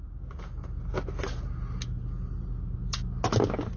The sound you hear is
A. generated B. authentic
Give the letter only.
B